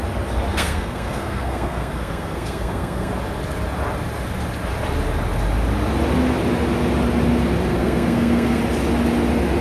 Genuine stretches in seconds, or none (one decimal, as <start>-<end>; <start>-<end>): 0.0-0.5; 3.1-7.7; 8.6-9.6